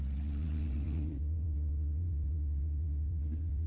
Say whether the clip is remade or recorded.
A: remade